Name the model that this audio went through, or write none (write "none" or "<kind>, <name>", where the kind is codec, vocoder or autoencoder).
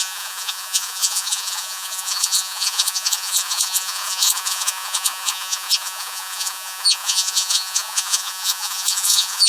vocoder, Vocos